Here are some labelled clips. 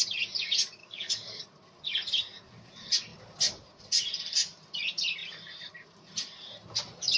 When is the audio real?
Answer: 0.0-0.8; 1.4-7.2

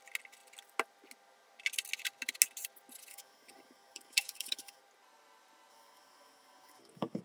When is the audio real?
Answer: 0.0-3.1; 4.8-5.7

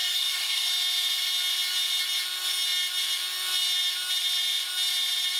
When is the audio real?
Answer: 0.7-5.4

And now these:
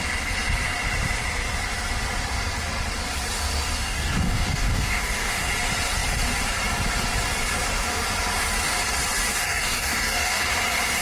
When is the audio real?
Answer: 0.0-3.8; 5.5-9.3; 10.4-11.0

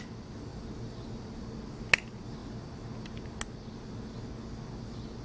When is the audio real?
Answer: 0.0-5.2

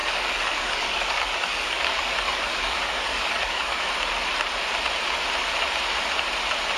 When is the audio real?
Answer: 3.9-6.8